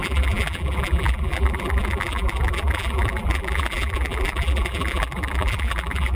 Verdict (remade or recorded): remade